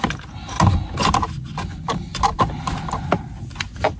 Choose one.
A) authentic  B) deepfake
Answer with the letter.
A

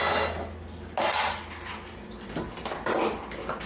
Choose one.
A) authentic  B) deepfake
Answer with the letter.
A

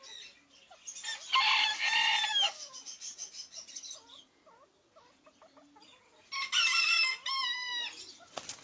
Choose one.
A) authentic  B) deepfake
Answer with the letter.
A